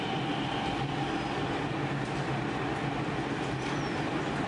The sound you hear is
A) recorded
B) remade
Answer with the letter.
A